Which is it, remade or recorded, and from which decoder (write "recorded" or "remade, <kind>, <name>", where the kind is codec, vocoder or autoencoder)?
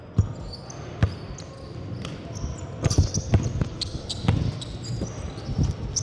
recorded